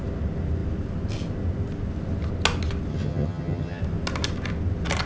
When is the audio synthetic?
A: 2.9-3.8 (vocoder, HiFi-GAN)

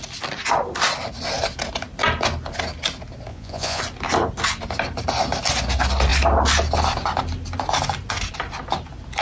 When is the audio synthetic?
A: 3.3-3.8 (vocoder, Vocos)